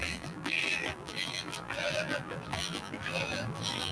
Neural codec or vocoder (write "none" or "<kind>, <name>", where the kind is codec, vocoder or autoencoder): vocoder, BigVGAN v2